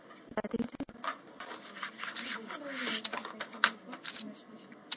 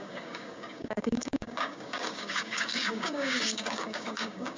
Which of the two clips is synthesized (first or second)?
second